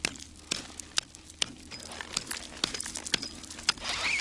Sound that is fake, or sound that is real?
real